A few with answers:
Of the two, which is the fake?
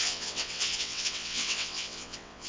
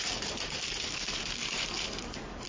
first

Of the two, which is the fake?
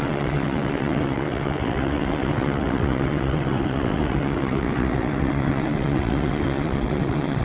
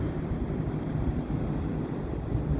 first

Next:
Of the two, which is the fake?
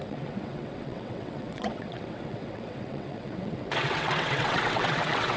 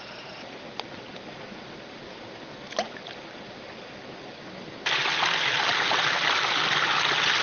first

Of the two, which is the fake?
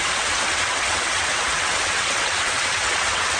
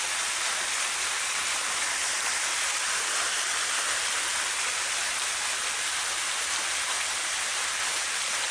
first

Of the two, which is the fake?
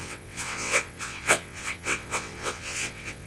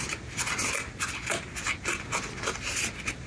first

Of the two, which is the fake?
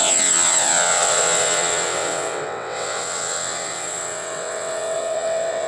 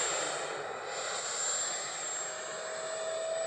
first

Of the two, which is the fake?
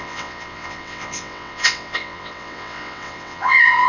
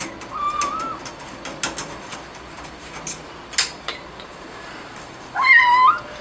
first